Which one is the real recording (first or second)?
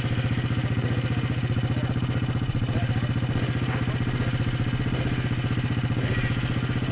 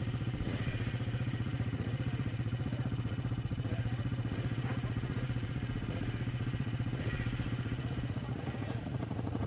first